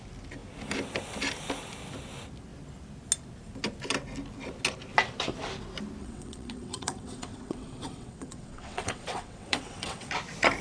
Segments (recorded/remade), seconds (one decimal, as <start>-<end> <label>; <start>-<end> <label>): 0.0-6.0 recorded; 6.0-10.1 remade; 10.1-10.6 recorded